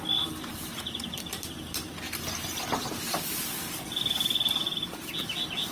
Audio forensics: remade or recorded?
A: recorded